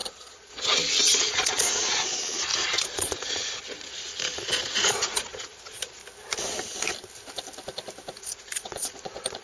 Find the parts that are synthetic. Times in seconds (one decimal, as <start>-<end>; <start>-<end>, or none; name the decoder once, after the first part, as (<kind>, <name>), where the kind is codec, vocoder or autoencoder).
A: 0.0-6.0 (vocoder, Vocos); 8.2-9.4